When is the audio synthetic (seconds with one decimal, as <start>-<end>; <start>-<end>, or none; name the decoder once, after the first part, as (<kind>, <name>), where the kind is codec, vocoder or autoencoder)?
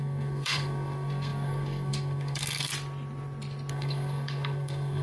0.0-2.7 (codec, SNAC); 3.7-5.0